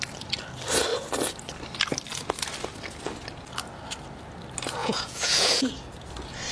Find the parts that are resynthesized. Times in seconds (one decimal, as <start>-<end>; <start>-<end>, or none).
4.8-5.7